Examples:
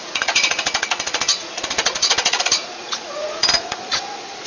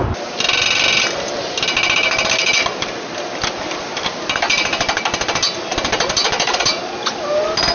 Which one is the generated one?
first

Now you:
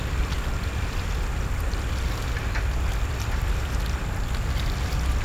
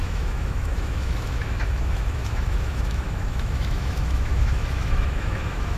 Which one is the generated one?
second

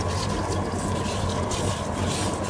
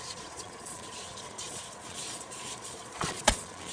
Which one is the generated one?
second